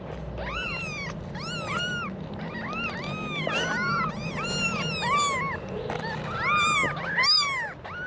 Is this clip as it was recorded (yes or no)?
yes